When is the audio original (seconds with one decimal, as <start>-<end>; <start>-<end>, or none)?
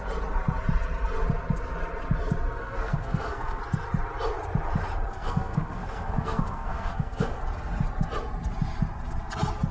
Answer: 0.0-2.6; 3.6-5.1; 7.4-9.7